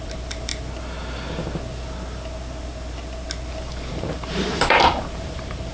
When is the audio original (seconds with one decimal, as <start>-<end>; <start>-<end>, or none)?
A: 0.5-3.9